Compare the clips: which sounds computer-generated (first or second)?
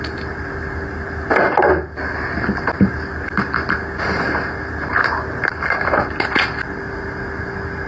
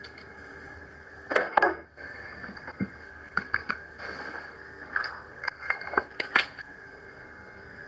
second